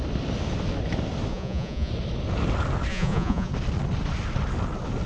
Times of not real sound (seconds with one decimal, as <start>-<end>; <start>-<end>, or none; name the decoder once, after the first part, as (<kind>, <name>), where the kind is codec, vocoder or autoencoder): 1.3-1.9 (vocoder, Vocos); 2.9-3.5